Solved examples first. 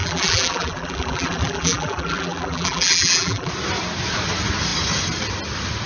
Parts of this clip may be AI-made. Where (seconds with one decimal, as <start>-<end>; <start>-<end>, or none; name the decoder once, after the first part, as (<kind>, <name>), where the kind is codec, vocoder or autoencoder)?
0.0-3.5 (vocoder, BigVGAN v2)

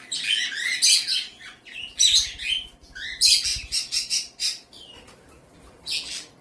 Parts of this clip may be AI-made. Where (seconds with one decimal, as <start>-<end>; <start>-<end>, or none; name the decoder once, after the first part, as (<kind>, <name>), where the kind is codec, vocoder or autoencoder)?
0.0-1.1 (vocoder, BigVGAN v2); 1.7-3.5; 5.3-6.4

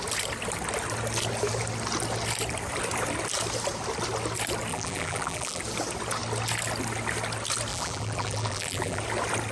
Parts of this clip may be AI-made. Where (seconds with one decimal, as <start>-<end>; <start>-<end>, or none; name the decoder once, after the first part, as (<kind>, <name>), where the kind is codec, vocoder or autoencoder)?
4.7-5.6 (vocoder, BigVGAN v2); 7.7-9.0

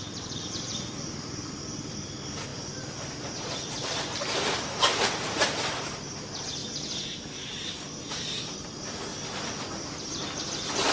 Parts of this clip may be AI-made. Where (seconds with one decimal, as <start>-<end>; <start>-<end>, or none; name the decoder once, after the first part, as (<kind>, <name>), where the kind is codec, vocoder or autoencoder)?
0.0-6.6 (vocoder, BigVGAN v2); 8.1-9.1

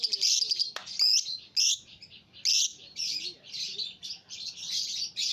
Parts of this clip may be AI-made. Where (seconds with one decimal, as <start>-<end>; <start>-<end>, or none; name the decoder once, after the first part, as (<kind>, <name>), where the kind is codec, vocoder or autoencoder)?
2.7-5.3 (vocoder, BigVGAN v2)

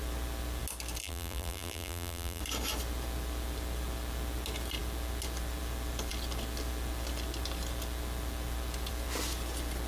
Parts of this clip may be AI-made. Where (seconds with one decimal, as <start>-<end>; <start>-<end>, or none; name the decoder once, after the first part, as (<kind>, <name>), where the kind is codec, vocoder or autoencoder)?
1.0-2.4 (vocoder, BigVGAN v2)